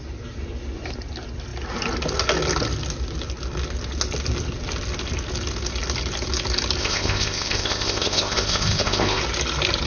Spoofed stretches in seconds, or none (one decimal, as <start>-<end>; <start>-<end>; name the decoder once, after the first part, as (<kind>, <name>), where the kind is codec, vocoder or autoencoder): 6.8-9.2 (codec, ZipCodec)